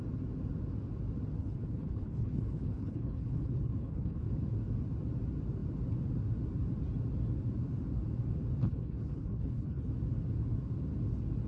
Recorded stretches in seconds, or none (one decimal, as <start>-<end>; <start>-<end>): 0.0-1.4; 4.3-8.6; 9.9-11.5